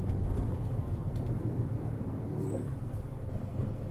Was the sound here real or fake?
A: fake